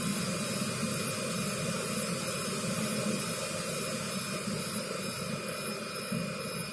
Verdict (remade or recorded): recorded